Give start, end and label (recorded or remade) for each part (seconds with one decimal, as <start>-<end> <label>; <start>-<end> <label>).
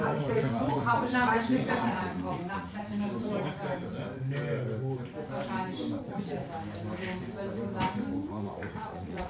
0.0-2.8 remade; 2.8-6.0 recorded; 6.0-6.4 remade; 6.4-8.3 recorded; 8.3-9.3 remade